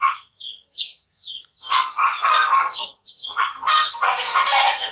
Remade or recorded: remade